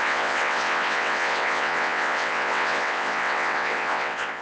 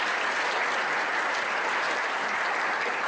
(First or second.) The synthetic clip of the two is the first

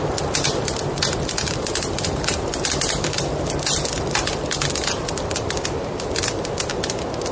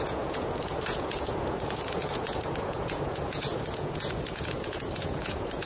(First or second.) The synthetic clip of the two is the second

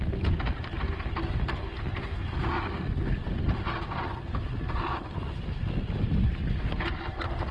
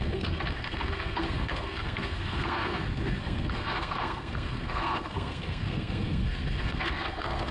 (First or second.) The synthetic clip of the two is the second